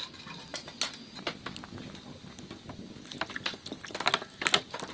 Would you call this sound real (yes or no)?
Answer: yes